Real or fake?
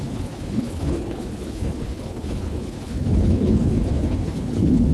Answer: fake